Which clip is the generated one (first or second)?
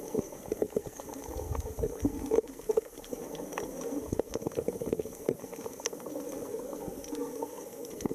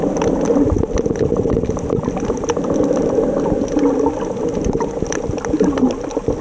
first